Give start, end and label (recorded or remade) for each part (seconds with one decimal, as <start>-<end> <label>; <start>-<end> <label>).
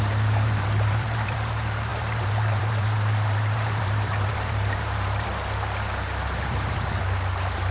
0.0-5.3 remade; 5.3-7.7 recorded